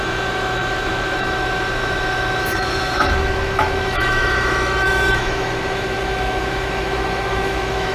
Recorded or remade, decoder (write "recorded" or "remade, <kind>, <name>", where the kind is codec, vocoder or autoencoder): remade, autoencoder, DAC-VAE